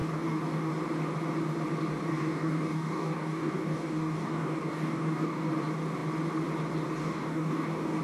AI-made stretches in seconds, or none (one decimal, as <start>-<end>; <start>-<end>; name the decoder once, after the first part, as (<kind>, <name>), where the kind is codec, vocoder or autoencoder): 0.0-0.7 (codec, DAC); 2.1-5.5; 7.0-8.0